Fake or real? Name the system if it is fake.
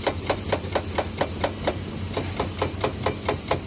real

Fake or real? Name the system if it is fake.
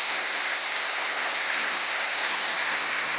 fake, codec, SNAC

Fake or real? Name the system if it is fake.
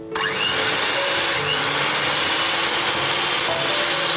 real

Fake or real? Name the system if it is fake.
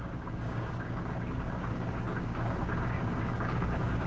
fake, codec, DAC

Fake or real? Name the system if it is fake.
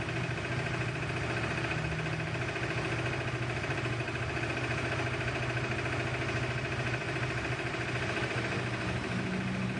real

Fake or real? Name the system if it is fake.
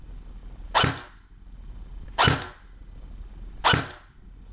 real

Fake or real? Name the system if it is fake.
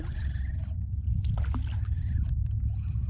real